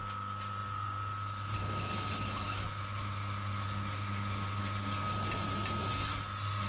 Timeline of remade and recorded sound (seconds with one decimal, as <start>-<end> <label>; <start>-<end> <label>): 0.0-6.7 recorded